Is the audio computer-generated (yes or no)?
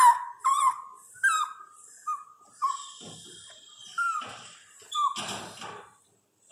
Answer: no